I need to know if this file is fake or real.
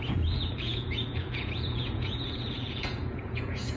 fake